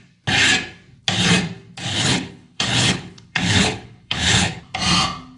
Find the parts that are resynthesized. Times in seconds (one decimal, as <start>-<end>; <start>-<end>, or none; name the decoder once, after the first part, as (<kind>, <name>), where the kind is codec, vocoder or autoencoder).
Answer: 1.9-4.6 (codec, HILCodec)